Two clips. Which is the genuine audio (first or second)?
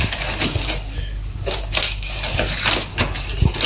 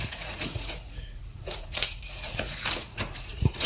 first